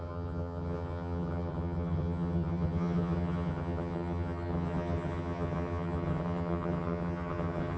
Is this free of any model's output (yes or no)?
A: no